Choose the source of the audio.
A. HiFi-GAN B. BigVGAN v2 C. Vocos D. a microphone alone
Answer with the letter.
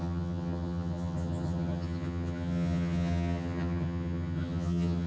A